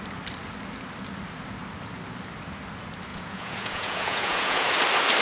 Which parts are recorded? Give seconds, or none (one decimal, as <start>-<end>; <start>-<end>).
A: 0.0-3.1; 4.7-5.2